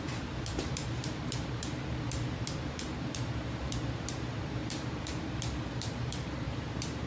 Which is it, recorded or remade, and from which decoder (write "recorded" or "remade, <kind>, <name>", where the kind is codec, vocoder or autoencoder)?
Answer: remade, vocoder, BigVGAN v2